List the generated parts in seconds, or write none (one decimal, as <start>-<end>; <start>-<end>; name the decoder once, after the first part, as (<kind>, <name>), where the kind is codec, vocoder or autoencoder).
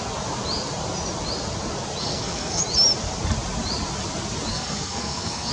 2.0-2.6 (codec, SNAC); 4.5-5.5